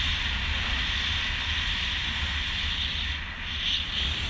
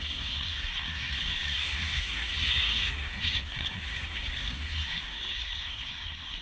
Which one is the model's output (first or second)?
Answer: second